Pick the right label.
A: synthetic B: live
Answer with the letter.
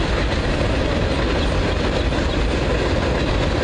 B